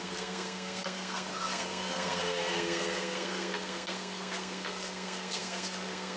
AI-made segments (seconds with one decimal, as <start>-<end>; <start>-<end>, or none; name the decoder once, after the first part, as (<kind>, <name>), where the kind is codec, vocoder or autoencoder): 0.0-6.2 (codec, SNAC)